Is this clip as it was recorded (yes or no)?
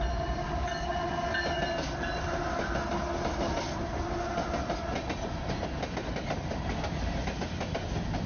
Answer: yes